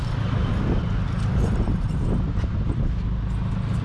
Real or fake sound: real